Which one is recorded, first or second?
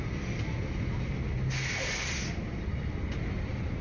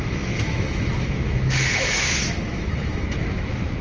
first